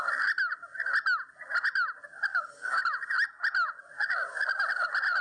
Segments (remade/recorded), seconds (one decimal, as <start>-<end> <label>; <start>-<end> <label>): 0.0-2.3 recorded; 2.3-2.8 remade; 2.8-5.2 recorded